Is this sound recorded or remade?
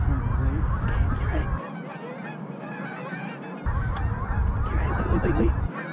recorded